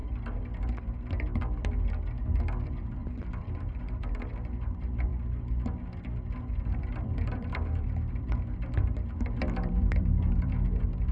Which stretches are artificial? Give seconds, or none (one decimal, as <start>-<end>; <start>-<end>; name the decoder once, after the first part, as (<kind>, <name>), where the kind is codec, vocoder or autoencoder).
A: 2.4-5.1 (vocoder, BigVGAN v2); 6.6-11.1

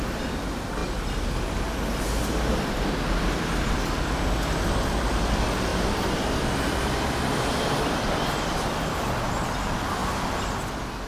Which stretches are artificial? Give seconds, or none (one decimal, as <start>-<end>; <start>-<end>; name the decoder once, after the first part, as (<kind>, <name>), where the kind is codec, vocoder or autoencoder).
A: none